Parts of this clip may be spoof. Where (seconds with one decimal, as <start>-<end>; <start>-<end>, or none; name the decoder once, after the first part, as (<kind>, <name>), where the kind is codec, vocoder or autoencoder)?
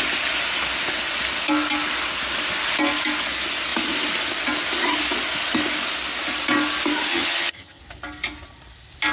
7.1-7.8 (vocoder, HiFi-GAN)